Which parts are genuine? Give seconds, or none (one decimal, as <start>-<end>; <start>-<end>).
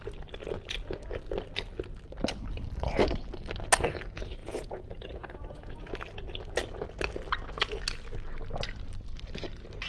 0.0-4.4; 5.9-9.9